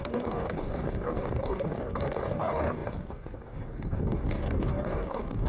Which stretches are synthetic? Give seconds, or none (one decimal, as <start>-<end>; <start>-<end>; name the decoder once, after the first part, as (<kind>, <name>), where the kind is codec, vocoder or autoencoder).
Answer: 0.0-5.5 (codec, DAC)